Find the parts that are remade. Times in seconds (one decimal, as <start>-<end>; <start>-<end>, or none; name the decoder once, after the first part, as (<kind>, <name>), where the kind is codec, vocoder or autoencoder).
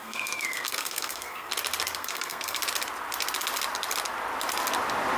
0.0-1.5 (codec, SNAC); 2.0-2.6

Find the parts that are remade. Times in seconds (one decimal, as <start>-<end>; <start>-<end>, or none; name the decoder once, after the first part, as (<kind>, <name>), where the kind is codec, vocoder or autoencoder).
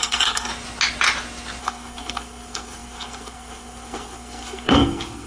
0.0-0.5 (codec, SNAC); 1.6-5.3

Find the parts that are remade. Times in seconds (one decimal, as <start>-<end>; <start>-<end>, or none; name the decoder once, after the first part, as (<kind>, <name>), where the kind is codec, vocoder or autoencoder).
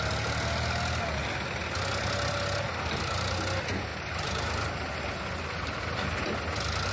none